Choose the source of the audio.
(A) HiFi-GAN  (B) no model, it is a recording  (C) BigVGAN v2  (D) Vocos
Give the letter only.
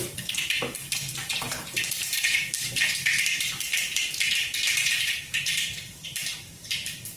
C